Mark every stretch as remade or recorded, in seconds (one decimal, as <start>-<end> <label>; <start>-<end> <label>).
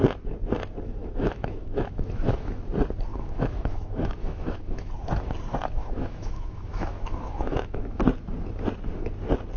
0.0-1.0 recorded; 1.0-2.6 remade; 2.6-3.1 recorded; 3.1-4.9 remade; 4.9-5.8 recorded; 5.8-8.0 remade; 8.0-9.6 recorded